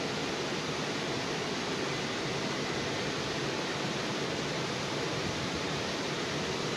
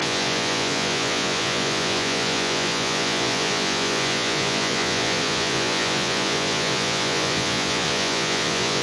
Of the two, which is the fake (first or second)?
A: second